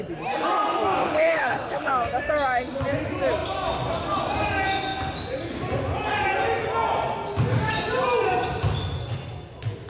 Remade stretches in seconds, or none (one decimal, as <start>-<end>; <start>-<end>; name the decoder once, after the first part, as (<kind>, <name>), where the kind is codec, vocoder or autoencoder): 1.0-1.9 (codec, HILCodec)